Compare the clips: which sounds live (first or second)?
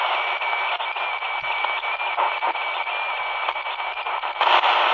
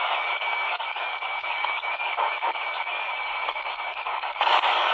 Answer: first